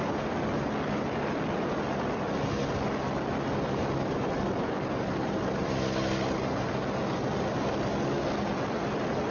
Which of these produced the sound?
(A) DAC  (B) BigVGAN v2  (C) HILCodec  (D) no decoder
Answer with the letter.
D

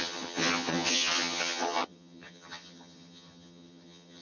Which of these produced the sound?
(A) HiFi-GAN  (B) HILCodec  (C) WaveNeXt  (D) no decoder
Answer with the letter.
A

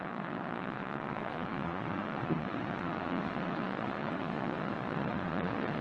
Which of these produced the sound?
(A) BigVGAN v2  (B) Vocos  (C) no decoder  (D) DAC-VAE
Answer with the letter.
B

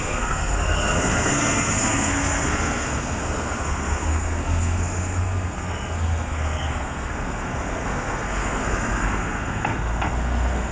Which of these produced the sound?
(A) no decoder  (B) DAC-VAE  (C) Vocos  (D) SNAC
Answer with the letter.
D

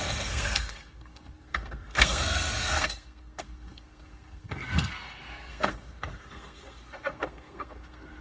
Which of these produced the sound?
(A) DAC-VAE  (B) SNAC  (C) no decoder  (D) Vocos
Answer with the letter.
B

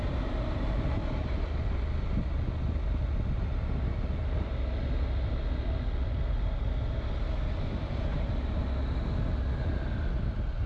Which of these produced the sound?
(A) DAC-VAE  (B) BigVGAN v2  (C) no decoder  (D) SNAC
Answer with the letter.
C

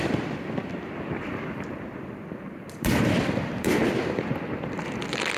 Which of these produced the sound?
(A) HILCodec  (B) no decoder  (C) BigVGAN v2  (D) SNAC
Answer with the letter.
C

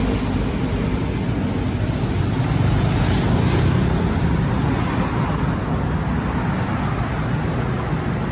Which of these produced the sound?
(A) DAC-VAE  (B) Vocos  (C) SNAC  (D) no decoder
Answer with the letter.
D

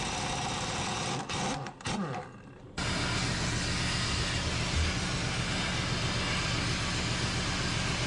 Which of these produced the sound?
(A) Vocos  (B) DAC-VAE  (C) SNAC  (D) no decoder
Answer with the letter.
D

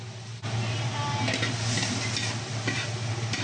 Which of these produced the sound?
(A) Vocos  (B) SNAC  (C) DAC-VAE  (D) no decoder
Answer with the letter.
D